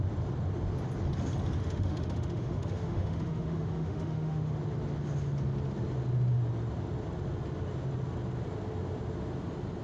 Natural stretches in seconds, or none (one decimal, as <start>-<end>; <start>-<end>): 0.0-1.6; 4.5-9.8